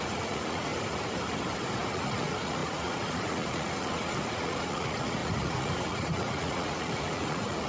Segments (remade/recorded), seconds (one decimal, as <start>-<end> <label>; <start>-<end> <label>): 0.0-0.7 remade; 0.7-1.9 recorded; 1.9-7.7 remade